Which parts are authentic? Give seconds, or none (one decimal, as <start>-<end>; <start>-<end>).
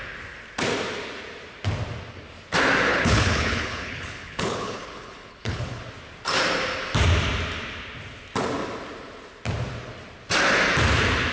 0.0-2.9; 5.8-11.3